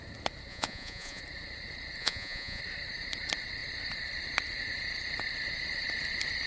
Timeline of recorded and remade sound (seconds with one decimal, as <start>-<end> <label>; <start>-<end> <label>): 0.0-0.5 recorded; 0.5-1.2 remade; 1.2-2.0 recorded; 2.0-2.6 remade; 2.6-6.5 recorded